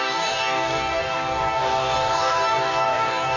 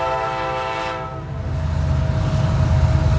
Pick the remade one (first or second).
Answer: first